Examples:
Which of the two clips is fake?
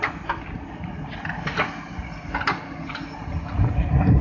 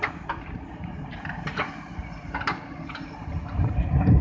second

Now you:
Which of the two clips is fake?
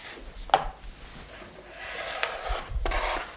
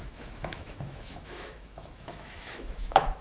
second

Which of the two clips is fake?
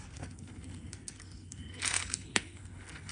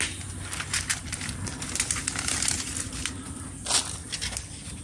first